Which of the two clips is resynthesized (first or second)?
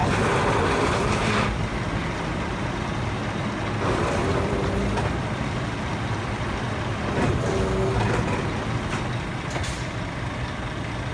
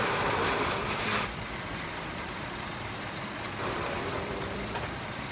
second